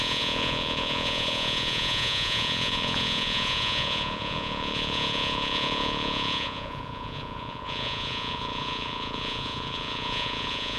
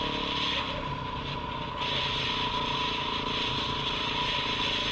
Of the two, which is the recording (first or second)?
second